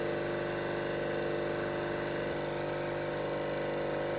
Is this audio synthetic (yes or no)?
no